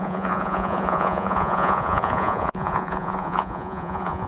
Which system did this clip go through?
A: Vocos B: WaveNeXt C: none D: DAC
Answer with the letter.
A